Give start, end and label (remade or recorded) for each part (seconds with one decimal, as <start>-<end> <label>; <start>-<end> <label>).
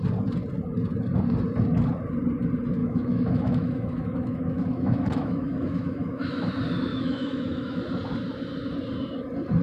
0.0-2.8 recorded; 2.8-6.5 remade; 6.5-6.9 recorded; 6.9-7.8 remade; 7.8-9.6 recorded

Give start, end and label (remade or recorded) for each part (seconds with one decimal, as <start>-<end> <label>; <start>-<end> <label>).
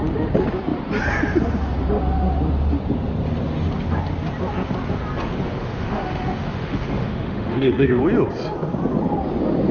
0.0-5.6 recorded; 5.6-8.0 remade; 8.0-9.7 recorded